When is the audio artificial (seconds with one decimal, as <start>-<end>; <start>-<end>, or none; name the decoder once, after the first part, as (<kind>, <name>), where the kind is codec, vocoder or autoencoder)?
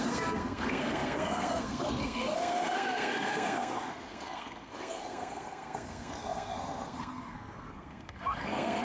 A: 0.0-8.8 (codec, SNAC)